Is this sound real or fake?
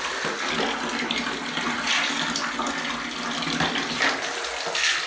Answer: real